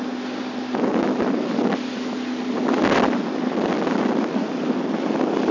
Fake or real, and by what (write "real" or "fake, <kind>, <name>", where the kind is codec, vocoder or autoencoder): real